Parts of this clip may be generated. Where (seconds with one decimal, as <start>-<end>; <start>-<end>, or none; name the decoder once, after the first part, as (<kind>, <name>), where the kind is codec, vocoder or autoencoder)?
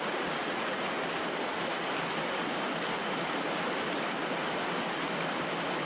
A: 0.4-1.0 (vocoder, Vocos)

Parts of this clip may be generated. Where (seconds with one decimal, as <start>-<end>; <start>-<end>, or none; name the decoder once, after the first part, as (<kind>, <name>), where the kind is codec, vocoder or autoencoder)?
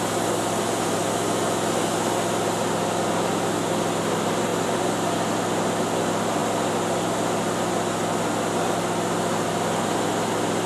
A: 4.5-5.4 (vocoder, BigVGAN v2)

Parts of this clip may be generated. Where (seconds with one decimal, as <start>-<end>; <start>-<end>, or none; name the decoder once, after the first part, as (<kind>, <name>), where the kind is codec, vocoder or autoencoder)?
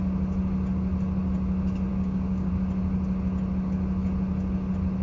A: 1.9-2.5 (codec, DAC)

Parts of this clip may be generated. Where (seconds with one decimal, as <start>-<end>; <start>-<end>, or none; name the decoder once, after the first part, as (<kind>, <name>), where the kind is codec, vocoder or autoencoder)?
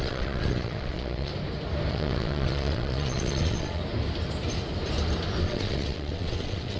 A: 0.0-1.3 (vocoder, WaveNeXt); 1.9-3.8; 5.4-6.8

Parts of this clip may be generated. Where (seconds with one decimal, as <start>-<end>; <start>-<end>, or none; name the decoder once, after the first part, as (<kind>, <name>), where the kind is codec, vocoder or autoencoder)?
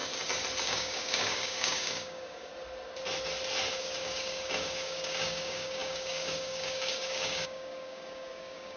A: 0.6-2.5 (codec, DAC); 3.7-8.8